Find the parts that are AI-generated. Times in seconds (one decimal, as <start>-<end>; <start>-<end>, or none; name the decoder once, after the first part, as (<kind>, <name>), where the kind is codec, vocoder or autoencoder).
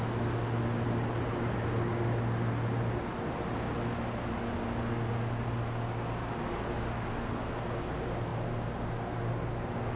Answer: none